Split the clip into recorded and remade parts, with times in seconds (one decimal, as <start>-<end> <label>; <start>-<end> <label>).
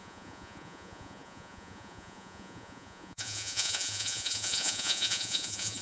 0.0-5.8 remade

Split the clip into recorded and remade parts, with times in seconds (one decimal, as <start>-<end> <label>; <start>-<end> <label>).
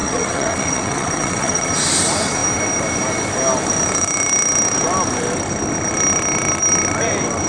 0.0-1.7 remade; 1.7-7.5 recorded